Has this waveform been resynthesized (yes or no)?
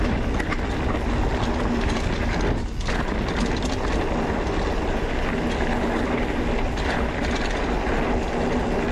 no